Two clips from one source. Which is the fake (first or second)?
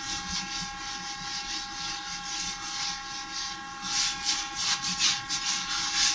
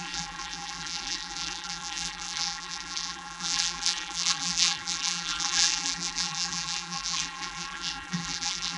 second